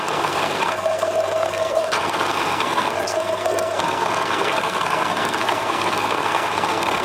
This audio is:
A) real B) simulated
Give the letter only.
B